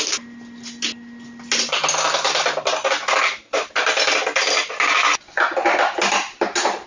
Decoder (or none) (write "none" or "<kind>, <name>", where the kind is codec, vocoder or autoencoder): none